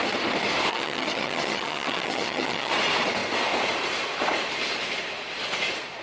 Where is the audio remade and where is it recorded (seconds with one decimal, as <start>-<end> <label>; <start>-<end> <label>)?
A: 0.0-0.7 recorded; 0.7-2.7 remade; 2.7-6.0 recorded